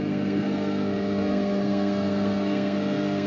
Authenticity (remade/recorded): remade